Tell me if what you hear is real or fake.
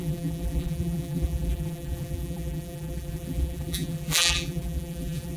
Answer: fake